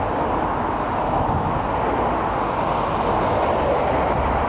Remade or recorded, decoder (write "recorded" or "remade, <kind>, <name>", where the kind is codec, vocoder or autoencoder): recorded